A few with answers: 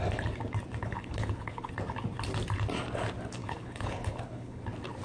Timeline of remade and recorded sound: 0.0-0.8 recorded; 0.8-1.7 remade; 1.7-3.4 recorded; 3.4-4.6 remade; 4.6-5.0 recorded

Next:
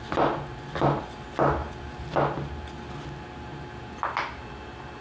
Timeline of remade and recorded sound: 0.0-5.0 recorded

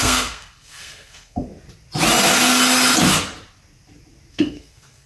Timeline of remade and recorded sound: 0.0-1.5 remade; 1.5-4.3 recorded; 4.3-5.1 remade

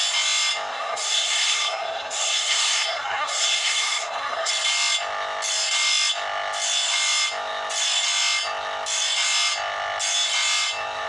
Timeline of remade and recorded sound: 0.0-0.7 recorded; 0.7-4.5 remade; 4.5-11.1 recorded

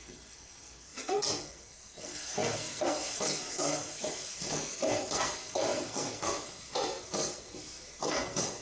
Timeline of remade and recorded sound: 0.0-8.6 remade

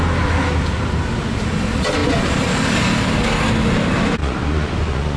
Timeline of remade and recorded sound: 0.0-4.2 recorded; 4.2-5.2 remade

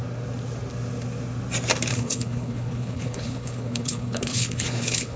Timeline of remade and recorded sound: 0.0-1.9 recorded; 1.9-5.2 remade

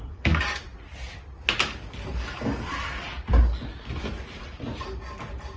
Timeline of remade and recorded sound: 0.0-5.6 recorded